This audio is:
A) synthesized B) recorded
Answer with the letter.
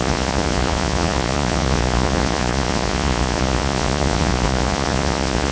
A